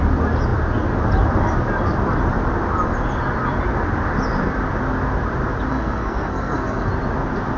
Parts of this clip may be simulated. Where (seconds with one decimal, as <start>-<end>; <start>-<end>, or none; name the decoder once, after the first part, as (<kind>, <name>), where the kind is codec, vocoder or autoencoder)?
5.7-6.9 (codec, SNAC)